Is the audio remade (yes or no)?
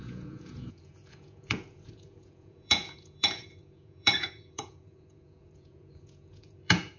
yes